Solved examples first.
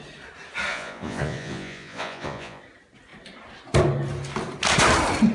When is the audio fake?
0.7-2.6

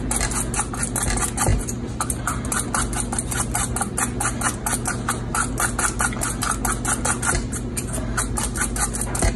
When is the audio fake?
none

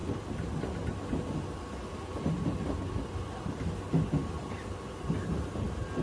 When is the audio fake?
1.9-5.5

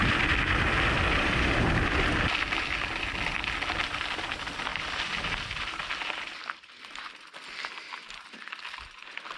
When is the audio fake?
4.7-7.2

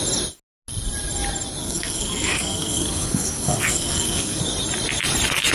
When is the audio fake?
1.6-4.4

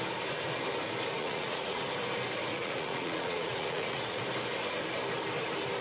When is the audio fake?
1.2-1.8; 2.5-4.2

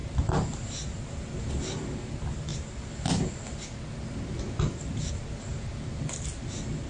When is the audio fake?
none